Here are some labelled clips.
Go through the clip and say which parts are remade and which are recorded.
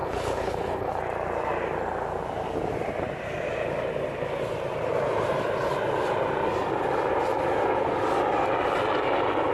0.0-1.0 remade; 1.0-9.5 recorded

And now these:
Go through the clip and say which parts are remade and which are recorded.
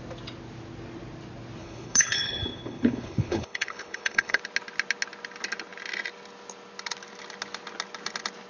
0.0-1.6 recorded; 1.6-4.4 remade; 4.4-8.5 recorded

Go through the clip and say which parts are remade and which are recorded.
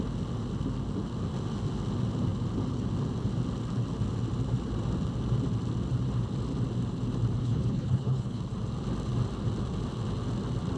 0.0-7.4 recorded; 7.4-8.4 remade; 8.4-10.8 recorded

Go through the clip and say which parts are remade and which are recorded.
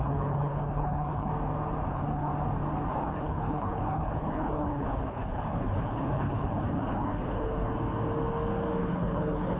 0.0-1.3 remade; 1.3-1.9 recorded; 1.9-2.3 remade; 2.3-2.9 recorded; 2.9-7.7 remade; 7.7-8.8 recorded; 8.8-9.6 remade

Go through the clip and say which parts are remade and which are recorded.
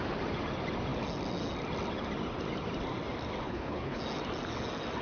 0.0-3.4 recorded; 3.4-4.0 remade; 4.0-5.0 recorded